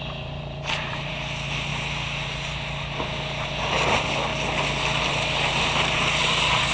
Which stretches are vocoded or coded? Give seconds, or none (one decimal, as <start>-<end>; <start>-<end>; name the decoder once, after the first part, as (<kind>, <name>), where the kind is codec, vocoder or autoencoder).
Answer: 0.0-4.3 (vocoder, BigVGAN v2); 5.1-6.7